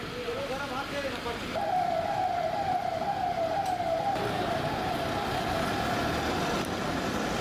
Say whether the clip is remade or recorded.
remade